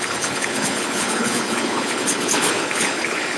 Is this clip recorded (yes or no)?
no